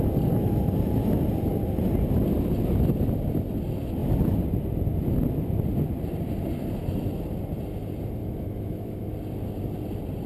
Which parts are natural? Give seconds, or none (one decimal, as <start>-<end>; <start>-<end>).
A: 0.0-8.2; 9.1-10.3

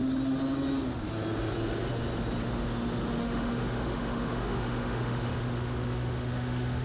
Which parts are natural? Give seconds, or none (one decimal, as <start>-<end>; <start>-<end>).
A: 0.0-3.2